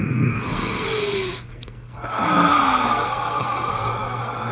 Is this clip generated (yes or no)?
yes